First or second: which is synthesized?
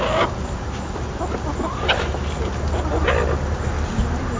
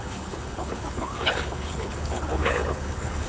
second